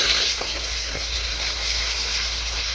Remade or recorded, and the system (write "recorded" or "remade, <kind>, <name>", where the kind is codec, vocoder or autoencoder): remade, codec, SNAC